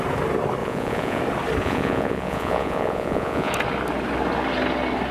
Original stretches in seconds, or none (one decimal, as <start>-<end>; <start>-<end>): 0.0-0.6; 1.2-1.6; 3.5-5.1